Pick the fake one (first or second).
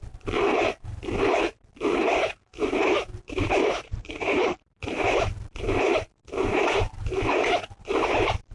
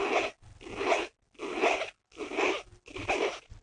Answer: first